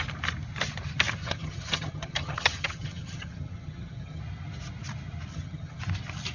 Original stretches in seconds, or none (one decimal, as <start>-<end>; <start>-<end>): 0.0-1.2; 4.2-5.3; 5.8-6.3